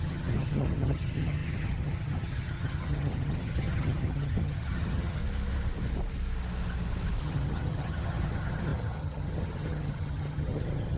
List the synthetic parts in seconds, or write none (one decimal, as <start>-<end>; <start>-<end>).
0.0-5.2; 7.2-11.0